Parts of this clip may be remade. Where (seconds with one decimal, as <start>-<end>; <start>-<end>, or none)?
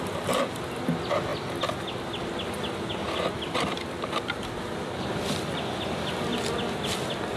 none